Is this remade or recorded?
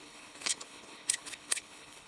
remade